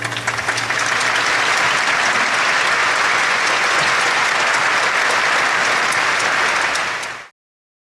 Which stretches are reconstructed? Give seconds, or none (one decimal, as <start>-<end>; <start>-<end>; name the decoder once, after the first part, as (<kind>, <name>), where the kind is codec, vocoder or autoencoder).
2.8-4.3 (vocoder, Vocos)